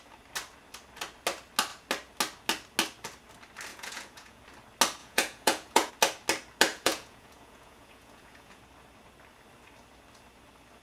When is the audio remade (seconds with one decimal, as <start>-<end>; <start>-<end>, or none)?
3.7-4.4; 5.0-5.9; 6.7-8.6